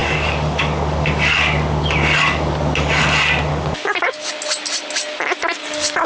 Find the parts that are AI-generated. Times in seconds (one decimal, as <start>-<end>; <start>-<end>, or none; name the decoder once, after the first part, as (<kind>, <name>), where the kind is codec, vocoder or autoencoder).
0.0-3.0 (codec, DAC); 3.5-4.3; 5.6-6.1